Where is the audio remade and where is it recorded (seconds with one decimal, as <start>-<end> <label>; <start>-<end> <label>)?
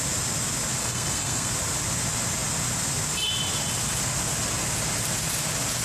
0.0-0.8 recorded; 0.8-1.5 remade; 1.5-5.8 recorded